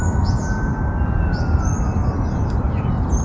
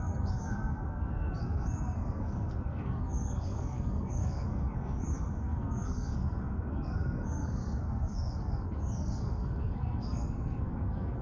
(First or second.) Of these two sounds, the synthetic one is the second